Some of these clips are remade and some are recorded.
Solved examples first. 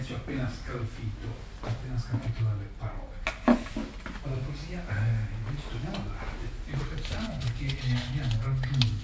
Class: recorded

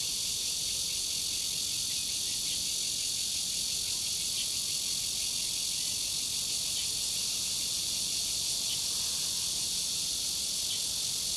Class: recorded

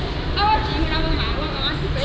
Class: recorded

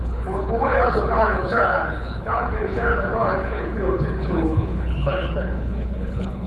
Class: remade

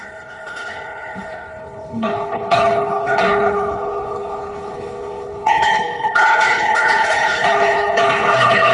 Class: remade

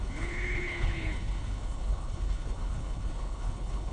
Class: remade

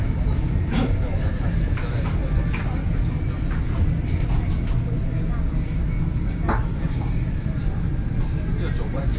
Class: recorded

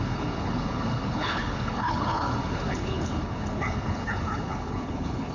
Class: remade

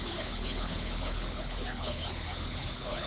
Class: remade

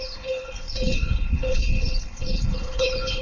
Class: remade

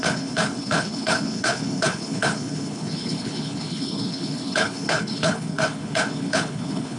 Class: remade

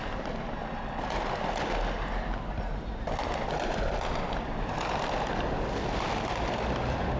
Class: recorded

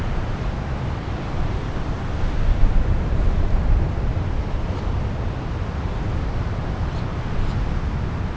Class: recorded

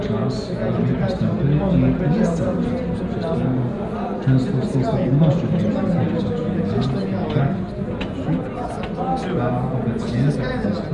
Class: recorded